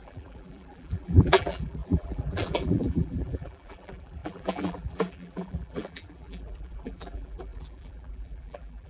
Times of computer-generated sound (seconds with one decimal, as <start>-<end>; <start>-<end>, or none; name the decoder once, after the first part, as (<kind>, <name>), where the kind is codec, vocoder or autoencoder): 0.0-8.9 (vocoder, BigVGAN v2)